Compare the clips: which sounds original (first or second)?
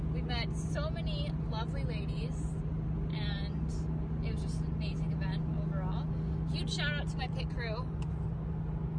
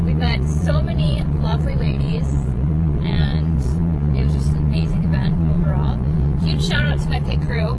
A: first